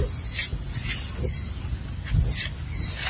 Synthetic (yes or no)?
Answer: no